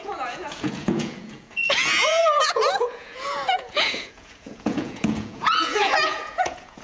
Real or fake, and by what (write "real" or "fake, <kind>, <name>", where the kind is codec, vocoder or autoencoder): fake, vocoder, Vocos